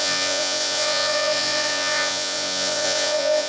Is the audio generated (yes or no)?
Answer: yes